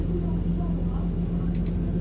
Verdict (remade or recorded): recorded